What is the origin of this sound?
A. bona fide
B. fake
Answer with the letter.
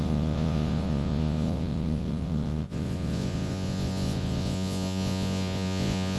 B